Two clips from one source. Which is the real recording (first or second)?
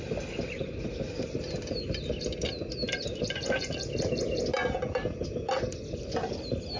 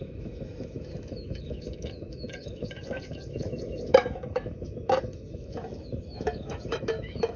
first